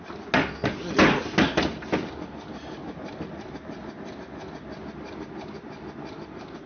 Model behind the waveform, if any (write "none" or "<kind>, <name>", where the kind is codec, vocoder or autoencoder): none